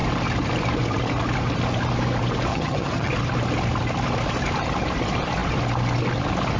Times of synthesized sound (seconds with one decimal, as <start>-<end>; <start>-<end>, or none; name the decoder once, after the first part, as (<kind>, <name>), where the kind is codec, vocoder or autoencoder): 2.5-3.1 (vocoder, HiFi-GAN)

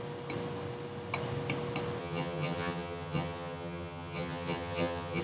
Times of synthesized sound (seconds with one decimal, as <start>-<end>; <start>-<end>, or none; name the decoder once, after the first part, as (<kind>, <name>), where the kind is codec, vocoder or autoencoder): 2.0-5.2 (vocoder, HiFi-GAN)

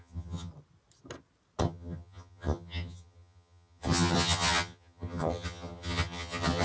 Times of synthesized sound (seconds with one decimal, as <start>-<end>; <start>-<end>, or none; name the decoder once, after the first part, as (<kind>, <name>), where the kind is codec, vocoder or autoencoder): 0.0-0.5 (vocoder, HiFi-GAN); 1.6-6.6

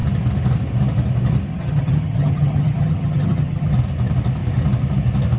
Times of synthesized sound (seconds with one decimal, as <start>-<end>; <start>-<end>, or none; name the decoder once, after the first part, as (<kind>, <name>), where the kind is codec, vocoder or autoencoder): 1.5-3.7 (vocoder, HiFi-GAN)

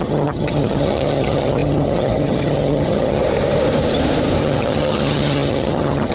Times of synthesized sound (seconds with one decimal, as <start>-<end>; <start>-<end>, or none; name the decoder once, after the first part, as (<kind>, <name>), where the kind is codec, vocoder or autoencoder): 0.0-3.2 (vocoder, HiFi-GAN); 4.4-6.1

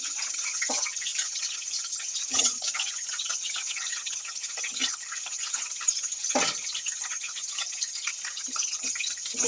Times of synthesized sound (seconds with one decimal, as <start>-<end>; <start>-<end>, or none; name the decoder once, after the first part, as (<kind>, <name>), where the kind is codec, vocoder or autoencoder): 0.0-9.5 (vocoder, HiFi-GAN)

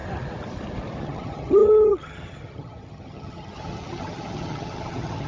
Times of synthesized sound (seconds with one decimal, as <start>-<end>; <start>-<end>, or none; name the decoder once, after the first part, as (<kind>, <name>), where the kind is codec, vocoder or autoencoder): 1.0-5.3 (vocoder, HiFi-GAN)